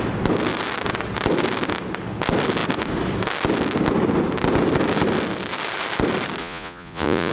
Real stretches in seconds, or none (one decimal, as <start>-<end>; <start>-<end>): 0.0-6.4